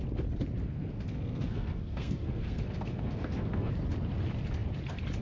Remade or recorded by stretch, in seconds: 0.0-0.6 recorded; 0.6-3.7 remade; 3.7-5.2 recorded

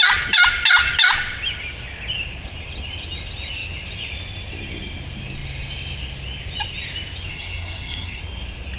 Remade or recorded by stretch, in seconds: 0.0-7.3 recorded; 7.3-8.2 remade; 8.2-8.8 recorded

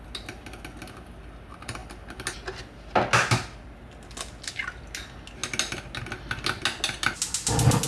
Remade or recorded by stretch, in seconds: 0.0-7.9 recorded